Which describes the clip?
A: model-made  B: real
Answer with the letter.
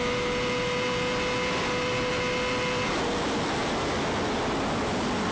B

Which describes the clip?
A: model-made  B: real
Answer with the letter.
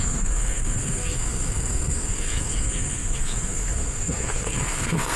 A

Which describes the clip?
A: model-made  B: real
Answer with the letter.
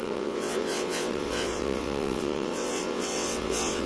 A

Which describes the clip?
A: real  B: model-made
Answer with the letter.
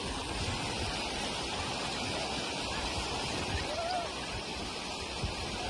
A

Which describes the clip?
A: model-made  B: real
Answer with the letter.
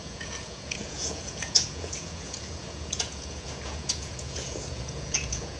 A